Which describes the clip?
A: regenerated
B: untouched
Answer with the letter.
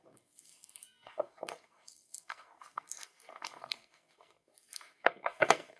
A